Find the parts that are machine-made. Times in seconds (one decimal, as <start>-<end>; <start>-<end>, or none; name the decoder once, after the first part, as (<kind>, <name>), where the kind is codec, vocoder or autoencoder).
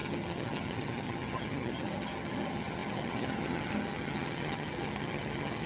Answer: 0.0-5.7 (vocoder, HiFi-GAN)